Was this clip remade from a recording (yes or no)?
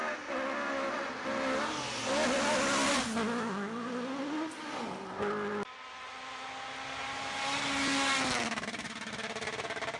no